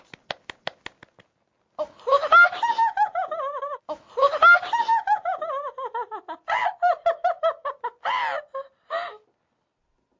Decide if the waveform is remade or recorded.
recorded